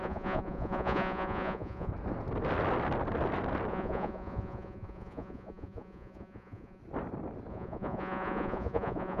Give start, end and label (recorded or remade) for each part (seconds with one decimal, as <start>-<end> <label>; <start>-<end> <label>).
0.0-1.9 remade; 1.9-3.7 recorded; 3.7-6.8 remade; 6.8-7.5 recorded; 7.5-9.2 remade